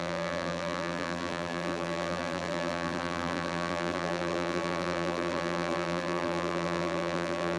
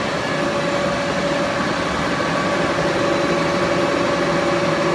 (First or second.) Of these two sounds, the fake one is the first